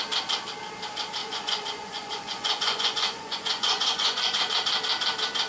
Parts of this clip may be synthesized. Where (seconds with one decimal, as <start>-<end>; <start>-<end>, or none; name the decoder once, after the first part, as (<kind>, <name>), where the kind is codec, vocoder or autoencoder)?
1.2-4.5 (vocoder, Vocos)